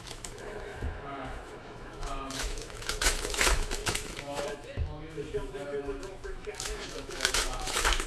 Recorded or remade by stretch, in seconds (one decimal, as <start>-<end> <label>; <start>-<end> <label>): 0.0-8.1 remade